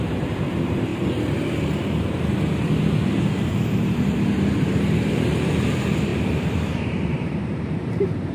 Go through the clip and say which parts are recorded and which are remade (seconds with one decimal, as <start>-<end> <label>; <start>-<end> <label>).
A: 0.0-0.9 remade; 0.9-3.2 recorded; 3.2-8.3 remade